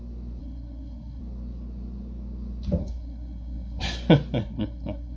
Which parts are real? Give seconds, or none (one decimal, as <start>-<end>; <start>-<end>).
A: 0.0-0.4; 1.2-2.8; 3.8-4.4